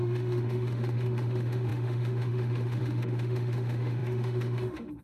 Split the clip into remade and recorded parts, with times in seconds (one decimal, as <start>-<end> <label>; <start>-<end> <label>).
0.0-5.0 remade